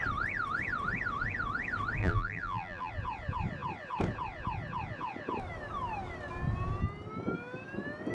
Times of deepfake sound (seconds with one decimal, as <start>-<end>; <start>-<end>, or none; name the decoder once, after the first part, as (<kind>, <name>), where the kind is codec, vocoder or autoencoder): 2.0-2.9 (vocoder, BigVGAN v2)